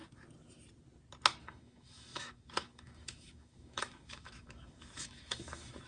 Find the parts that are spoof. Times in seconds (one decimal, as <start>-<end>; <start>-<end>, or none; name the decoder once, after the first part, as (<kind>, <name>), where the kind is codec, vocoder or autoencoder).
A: 1.4-5.9 (autoencoder, DAC-VAE)